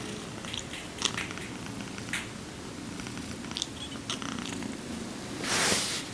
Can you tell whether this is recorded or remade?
recorded